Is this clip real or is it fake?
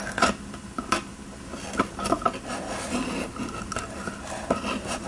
real